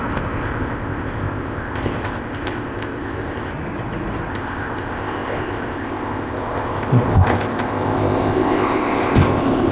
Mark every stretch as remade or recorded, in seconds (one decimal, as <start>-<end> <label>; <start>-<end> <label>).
0.0-3.5 remade; 3.5-4.3 recorded; 4.3-9.7 remade

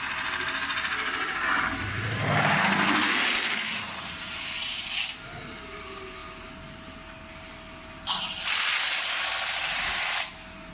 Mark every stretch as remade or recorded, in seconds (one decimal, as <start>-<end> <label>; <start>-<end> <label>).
0.0-10.7 recorded

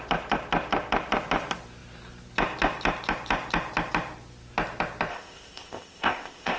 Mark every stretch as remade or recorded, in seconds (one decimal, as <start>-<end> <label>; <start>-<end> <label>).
0.0-5.1 recorded; 5.1-6.6 remade

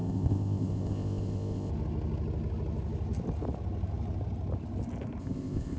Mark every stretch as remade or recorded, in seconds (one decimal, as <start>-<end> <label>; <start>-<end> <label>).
0.0-1.7 remade; 1.7-5.2 recorded; 5.2-5.8 remade

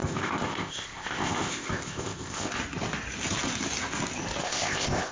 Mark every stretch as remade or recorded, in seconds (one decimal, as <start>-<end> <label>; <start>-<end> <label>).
0.0-2.6 remade; 2.6-4.4 recorded; 4.4-5.1 remade

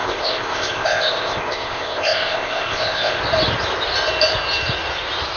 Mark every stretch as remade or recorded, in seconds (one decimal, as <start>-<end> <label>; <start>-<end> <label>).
0.0-3.2 remade; 3.2-5.4 recorded

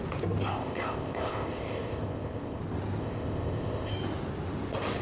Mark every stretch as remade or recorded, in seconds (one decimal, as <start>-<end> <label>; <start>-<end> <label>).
0.0-0.5 recorded; 0.5-2.6 remade; 2.6-3.0 recorded; 3.0-3.9 remade; 3.9-5.0 recorded